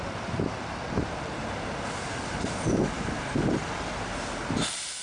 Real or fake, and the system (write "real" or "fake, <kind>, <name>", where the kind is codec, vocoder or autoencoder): real